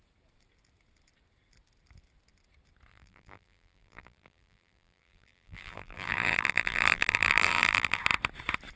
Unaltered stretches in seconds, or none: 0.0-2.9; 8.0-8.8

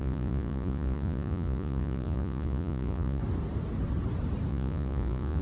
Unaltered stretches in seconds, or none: 3.2-4.5

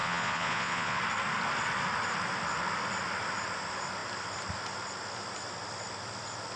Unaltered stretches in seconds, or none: 1.0-6.6

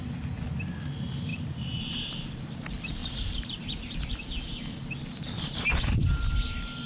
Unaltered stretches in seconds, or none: 0.0-1.3; 1.9-3.0; 4.0-6.9

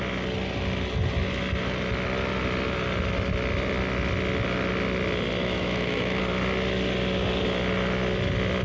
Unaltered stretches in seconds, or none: 0.0-5.4; 6.2-8.6

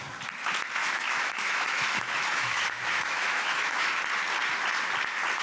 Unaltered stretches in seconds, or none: 0.0-0.8; 4.0-5.4

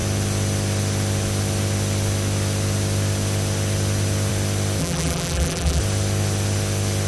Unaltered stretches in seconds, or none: 0.0-4.8; 5.8-7.1